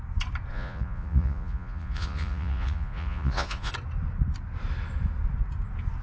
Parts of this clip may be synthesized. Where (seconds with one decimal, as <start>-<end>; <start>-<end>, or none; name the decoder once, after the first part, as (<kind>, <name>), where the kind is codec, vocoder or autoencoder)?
0.5-3.7 (vocoder, Vocos)